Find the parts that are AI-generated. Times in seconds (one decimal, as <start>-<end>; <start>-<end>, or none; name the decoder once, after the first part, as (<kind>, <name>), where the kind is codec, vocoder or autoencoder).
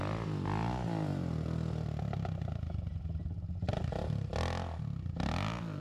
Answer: none